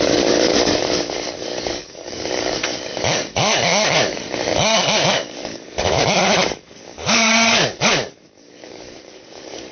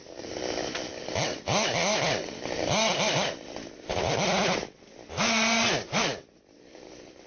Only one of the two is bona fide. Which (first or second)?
second